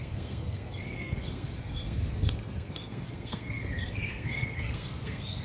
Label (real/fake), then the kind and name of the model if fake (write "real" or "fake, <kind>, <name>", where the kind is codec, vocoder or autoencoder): fake, codec, SNAC